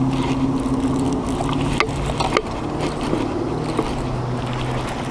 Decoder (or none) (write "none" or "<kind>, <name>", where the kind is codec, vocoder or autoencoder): none